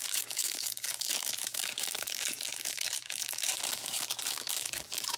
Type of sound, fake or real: fake